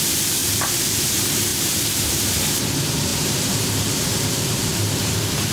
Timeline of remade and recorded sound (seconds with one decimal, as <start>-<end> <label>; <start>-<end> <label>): 0.0-0.4 remade; 0.4-1.0 recorded; 1.0-5.5 remade